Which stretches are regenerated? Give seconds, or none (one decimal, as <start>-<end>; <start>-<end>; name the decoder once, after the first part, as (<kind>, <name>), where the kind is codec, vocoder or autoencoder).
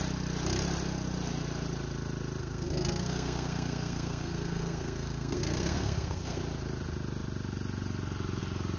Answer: 2.4-6.4 (codec, SNAC)